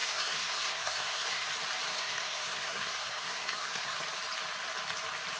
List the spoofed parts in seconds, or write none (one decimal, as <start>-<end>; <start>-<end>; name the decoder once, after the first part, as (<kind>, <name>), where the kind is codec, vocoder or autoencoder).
0.0-1.5 (codec, SNAC); 1.9-4.0